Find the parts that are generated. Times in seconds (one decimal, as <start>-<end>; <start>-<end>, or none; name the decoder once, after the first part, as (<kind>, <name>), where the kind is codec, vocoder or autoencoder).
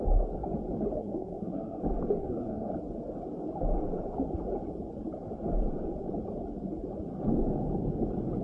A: 1.0-1.8 (codec, SNAC); 2.2-2.7